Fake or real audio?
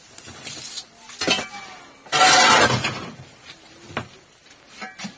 real